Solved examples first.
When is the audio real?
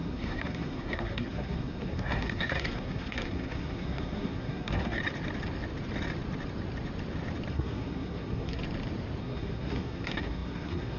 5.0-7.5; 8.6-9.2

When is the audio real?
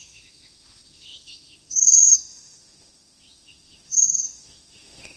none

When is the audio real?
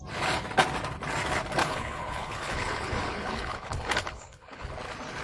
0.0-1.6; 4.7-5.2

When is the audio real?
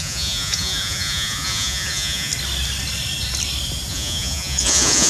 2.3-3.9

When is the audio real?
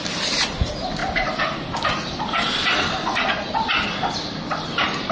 0.0-5.1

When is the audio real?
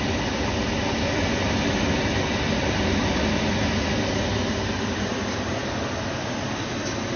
0.0-7.2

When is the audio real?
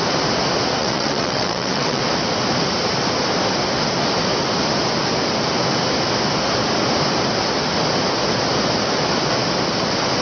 0.0-0.8; 2.0-10.2